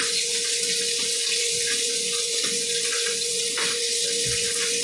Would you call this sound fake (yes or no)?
yes